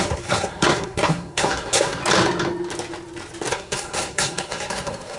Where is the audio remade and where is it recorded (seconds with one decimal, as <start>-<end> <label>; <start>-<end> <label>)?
0.0-2.0 remade; 2.0-3.5 recorded; 3.5-5.2 remade